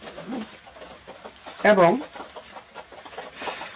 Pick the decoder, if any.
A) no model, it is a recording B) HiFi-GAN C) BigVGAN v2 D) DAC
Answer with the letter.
A